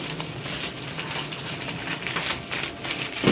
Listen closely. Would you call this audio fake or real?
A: real